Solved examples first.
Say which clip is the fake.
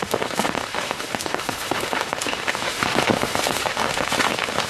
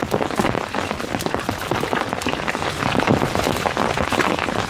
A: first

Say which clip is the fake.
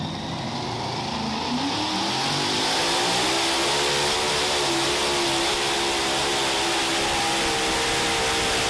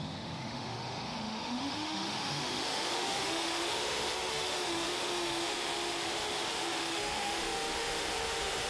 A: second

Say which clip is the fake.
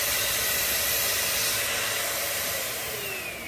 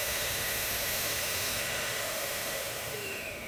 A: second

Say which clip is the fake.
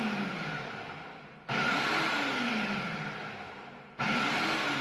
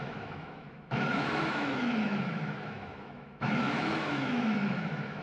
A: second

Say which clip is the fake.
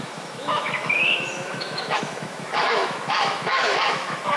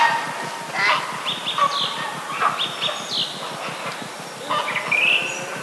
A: first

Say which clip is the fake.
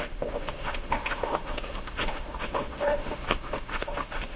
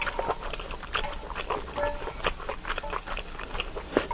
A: first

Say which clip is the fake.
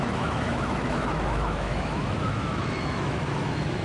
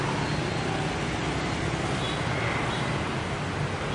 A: first